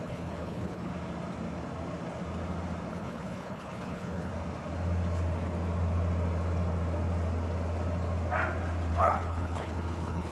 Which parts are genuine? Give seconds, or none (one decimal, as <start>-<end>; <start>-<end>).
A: 0.9-2.9; 4.3-8.9